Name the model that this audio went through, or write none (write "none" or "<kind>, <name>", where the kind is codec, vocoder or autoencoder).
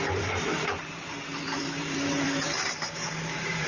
vocoder, BigVGAN v2